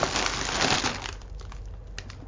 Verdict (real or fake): real